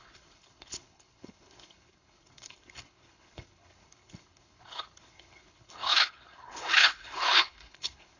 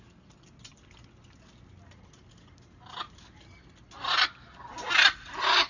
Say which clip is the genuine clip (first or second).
second